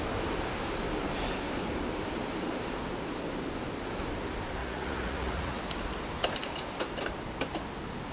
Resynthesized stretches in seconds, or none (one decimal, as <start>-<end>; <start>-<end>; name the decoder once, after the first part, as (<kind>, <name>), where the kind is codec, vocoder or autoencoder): 4.6-5.6 (vocoder, Vocos)